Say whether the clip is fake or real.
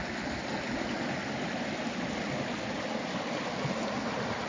real